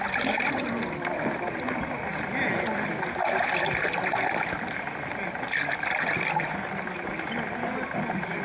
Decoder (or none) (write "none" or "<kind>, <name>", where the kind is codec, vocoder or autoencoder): none